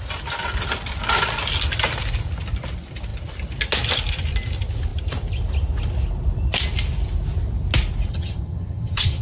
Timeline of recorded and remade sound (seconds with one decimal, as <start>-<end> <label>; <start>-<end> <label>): 0.0-8.1 recorded; 8.1-9.2 remade